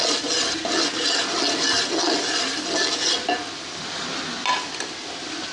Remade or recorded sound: recorded